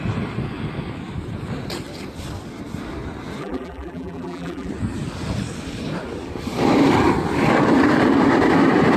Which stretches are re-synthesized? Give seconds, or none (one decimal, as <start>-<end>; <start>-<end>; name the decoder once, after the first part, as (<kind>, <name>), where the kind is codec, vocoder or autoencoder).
3.4-4.7 (vocoder, BigVGAN v2)